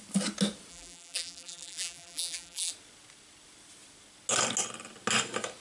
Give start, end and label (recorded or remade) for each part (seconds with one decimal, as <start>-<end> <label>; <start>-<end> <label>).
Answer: 0.0-0.7 recorded; 0.7-2.7 remade; 2.7-5.6 recorded